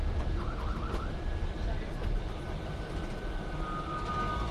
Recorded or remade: recorded